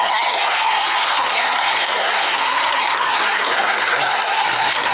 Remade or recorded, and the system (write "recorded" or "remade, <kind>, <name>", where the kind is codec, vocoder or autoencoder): remade, codec, SNAC